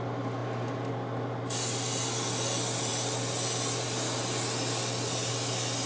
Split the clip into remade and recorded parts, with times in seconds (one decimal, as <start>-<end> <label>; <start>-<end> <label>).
0.0-5.9 recorded